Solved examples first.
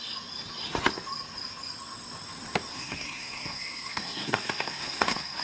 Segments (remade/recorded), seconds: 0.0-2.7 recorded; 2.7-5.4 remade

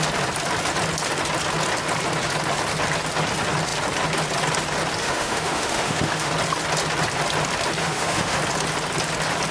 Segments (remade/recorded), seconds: 0.0-5.0 recorded; 5.0-6.3 remade; 6.3-7.8 recorded; 7.8-8.4 remade; 8.4-9.5 recorded

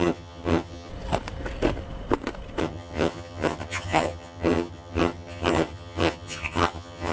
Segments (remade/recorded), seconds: 0.0-0.9 remade; 0.9-2.6 recorded; 2.6-7.1 remade

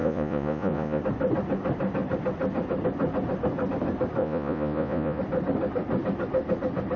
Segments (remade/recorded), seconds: 0.0-1.0 remade; 1.0-4.2 recorded; 4.2-5.2 remade; 5.2-7.0 recorded

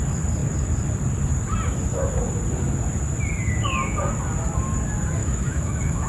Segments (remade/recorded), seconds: 0.0-5.2 recorded; 5.2-6.1 remade

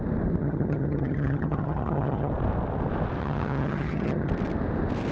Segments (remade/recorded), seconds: 0.0-0.4 recorded; 0.4-2.3 remade; 2.3-3.2 recorded; 3.2-4.3 remade; 4.3-5.1 recorded

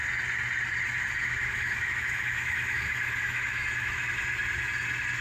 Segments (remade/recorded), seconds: 0.0-1.2 recorded; 1.2-4.1 remade; 4.1-5.2 recorded